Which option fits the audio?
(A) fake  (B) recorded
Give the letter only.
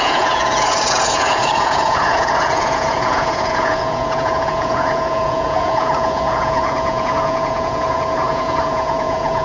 A